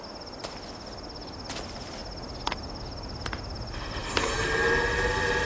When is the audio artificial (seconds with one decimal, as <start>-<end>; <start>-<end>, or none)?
none